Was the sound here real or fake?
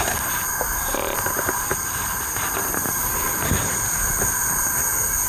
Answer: real